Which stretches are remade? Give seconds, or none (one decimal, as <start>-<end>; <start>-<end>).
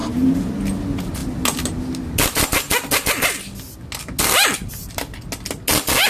0.0-0.5